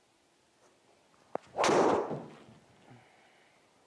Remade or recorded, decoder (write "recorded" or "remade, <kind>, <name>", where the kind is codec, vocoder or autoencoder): recorded